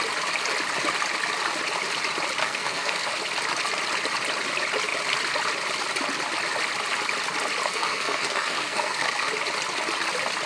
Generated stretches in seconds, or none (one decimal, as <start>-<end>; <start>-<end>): 2.4-3.1; 7.7-9.3